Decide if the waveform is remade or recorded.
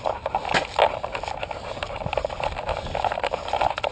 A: recorded